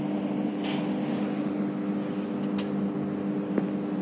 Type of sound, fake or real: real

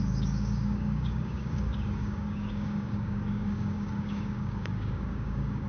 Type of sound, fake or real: fake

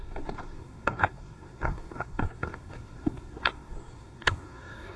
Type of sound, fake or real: fake